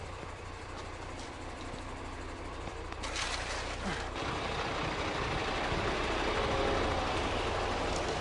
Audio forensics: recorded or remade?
remade